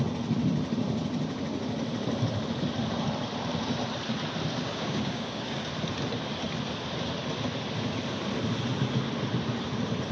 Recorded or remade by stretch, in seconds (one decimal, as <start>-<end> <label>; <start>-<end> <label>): 0.0-4.6 recorded; 4.6-5.7 remade; 5.7-10.1 recorded

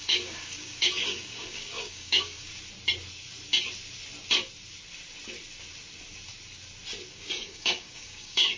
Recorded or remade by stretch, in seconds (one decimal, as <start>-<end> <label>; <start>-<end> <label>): 0.0-2.5 remade; 2.5-7.1 recorded; 7.1-8.6 remade

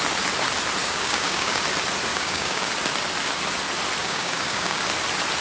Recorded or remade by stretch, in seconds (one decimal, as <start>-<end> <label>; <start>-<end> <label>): 0.0-0.8 recorded; 0.8-1.6 remade; 1.6-2.1 recorded; 2.1-2.7 remade; 2.7-4.0 recorded; 4.0-4.8 remade; 4.8-5.4 recorded

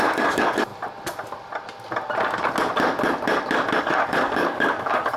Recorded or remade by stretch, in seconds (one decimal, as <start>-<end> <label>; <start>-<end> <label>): 0.0-0.7 remade; 0.7-3.8 recorded; 3.8-5.2 remade

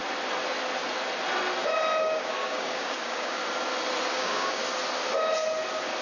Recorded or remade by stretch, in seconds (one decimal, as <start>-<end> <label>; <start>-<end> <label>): 0.0-2.0 recorded; 2.0-3.4 remade; 3.4-4.1 recorded; 4.1-4.6 remade; 4.6-6.0 recorded

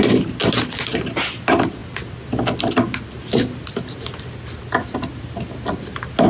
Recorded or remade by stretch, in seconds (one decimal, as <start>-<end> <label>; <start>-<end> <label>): 0.0-6.3 recorded